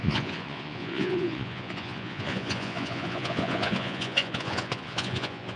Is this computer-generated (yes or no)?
yes